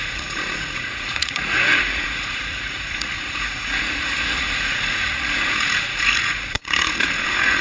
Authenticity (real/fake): fake